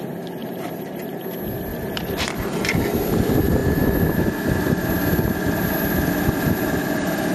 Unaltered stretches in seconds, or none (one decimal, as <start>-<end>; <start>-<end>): 0.0-0.4; 1.2-1.7; 2.7-7.3